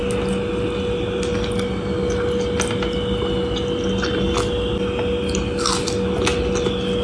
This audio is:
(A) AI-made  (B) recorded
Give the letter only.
B